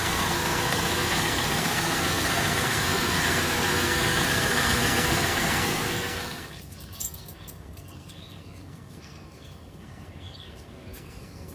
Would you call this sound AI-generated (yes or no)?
yes